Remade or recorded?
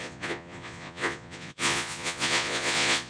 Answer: remade